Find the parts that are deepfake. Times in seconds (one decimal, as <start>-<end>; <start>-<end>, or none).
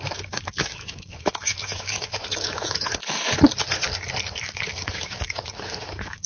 0.0-3.0; 4.4-6.3